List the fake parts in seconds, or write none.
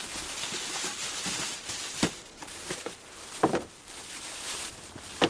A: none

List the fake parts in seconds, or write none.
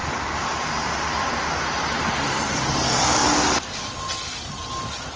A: 0.0-3.2 (vocoder, BigVGAN v2)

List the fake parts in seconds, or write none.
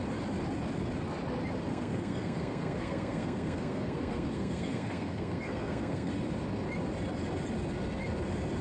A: 1.7-6.1 (codec, SNAC)